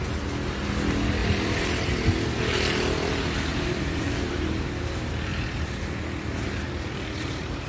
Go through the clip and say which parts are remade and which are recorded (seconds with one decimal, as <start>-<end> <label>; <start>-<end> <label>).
0.0-1.2 recorded; 1.2-1.9 remade; 1.9-3.5 recorded; 3.5-4.0 remade; 4.0-5.3 recorded; 5.3-5.9 remade; 5.9-7.7 recorded